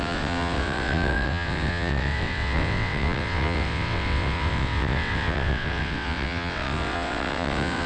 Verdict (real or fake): fake